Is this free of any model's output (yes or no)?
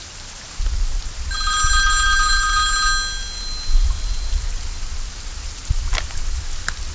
yes